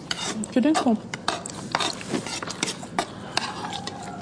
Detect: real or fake fake